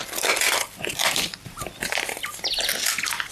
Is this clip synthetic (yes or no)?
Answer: yes